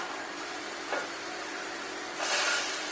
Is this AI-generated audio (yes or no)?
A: yes